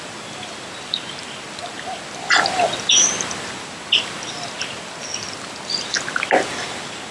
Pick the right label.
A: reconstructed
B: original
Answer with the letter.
B